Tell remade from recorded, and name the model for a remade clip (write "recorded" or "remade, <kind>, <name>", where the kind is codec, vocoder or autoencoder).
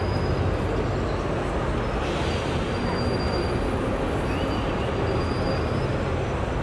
recorded